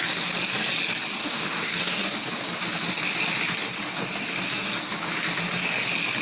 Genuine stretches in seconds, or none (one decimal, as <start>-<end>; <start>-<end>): 0.0-1.2; 1.7-6.2